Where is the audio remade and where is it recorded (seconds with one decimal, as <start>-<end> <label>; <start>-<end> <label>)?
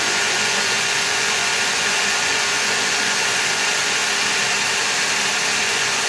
0.0-4.0 remade; 4.0-5.6 recorded; 5.6-6.1 remade